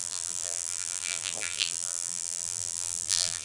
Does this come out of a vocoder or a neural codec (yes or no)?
yes